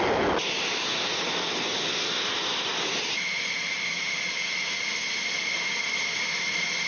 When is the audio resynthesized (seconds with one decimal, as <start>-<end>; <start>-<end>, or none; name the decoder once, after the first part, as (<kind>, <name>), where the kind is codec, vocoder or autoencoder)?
none